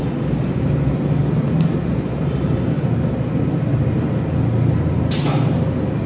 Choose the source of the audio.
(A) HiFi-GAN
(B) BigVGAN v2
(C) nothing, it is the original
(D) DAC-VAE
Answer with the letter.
C